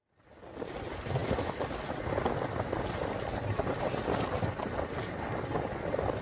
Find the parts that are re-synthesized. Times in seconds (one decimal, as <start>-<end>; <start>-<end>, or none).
none